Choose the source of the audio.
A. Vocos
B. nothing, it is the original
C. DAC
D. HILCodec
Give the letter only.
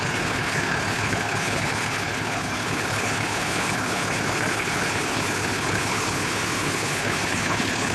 D